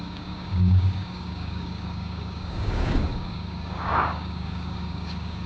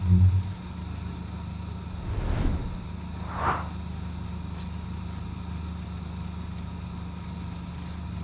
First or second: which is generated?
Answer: first